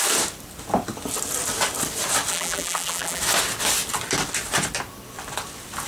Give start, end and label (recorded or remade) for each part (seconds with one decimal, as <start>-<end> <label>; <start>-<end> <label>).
0.0-2.3 recorded; 2.3-3.2 remade; 3.2-5.9 recorded